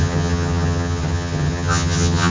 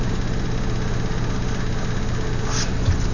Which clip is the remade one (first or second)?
first